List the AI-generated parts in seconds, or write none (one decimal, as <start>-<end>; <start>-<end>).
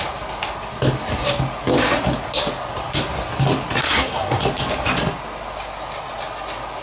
3.8-4.4